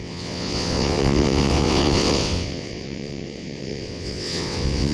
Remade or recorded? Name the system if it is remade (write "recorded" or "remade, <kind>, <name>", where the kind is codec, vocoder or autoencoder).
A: remade, vocoder, WaveNeXt